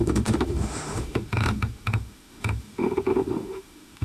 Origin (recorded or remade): remade